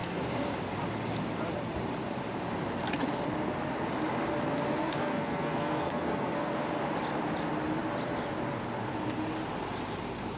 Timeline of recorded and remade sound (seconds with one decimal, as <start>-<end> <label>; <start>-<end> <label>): 0.0-4.8 recorded; 4.8-6.5 remade; 6.5-10.4 recorded

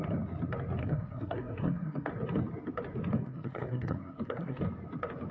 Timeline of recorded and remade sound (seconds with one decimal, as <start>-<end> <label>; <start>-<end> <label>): 0.0-0.8 recorded; 0.8-2.1 remade; 2.1-3.1 recorded; 3.1-4.6 remade; 4.6-5.3 recorded

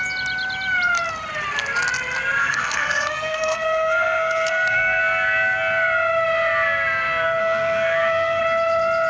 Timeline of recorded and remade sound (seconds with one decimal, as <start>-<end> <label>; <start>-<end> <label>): 0.0-2.4 recorded; 2.4-5.0 remade; 5.0-7.4 recorded; 7.4-8.4 remade; 8.4-9.1 recorded